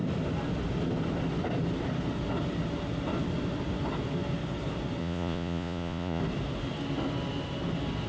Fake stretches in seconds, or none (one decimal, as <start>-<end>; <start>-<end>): 5.0-6.2